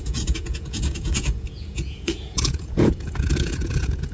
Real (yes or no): no